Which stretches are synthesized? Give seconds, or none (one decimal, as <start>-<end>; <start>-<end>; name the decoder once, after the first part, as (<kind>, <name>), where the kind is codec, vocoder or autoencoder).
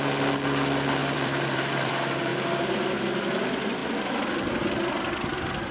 1.0-1.9 (vocoder, BigVGAN v2)